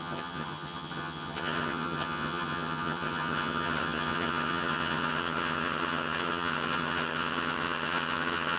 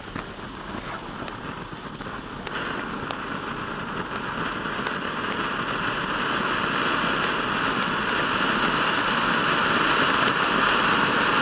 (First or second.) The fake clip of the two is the first